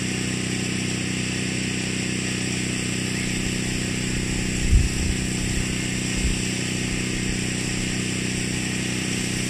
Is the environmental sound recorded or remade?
recorded